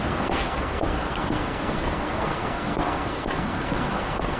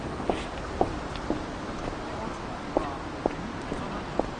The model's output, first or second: first